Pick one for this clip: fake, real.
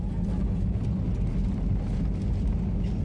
real